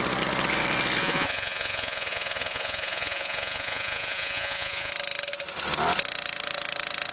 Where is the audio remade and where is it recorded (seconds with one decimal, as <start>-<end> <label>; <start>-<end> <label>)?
0.0-1.0 recorded; 1.0-4.9 remade; 4.9-7.1 recorded